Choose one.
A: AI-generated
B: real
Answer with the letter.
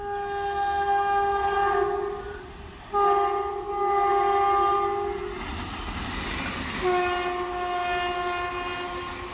B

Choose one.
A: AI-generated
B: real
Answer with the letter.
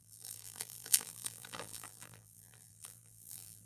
A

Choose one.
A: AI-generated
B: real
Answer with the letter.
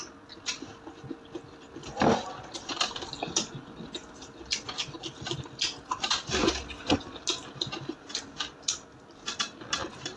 B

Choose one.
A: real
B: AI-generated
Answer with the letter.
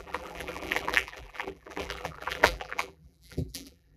B